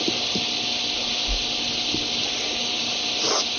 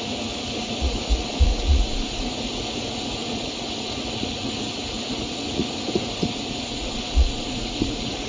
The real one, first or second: first